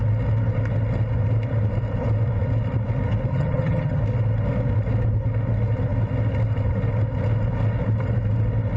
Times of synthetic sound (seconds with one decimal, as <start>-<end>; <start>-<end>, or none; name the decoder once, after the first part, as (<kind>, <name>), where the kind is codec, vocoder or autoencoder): 3.3-4.0 (vocoder, HiFi-GAN)

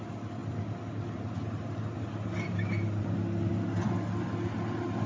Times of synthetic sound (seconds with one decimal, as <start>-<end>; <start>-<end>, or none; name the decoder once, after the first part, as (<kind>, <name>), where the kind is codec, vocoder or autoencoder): none

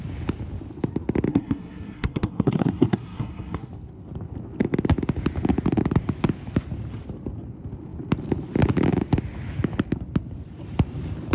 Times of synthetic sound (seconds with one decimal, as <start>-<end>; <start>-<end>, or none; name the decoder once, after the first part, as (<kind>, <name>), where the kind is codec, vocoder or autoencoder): 1.3-3.7 (codec, SNAC)

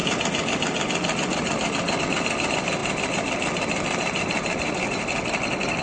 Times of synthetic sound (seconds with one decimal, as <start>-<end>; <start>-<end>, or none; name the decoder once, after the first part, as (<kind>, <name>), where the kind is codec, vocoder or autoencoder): none

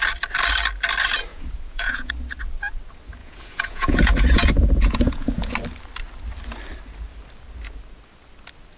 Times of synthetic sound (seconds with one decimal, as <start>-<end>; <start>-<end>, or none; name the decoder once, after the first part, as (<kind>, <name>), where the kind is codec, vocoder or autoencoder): 1.3-2.1 (vocoder, Vocos); 3.2-5.5

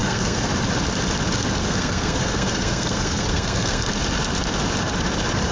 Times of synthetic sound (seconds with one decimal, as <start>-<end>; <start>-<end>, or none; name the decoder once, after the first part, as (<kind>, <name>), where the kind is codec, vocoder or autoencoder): 0.0-0.5 (codec, SNAC); 1.6-3.9

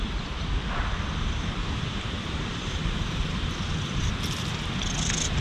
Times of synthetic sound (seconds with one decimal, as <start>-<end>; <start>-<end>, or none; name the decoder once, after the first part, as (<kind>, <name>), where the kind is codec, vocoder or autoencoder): 1.6-4.1 (vocoder, BigVGAN v2)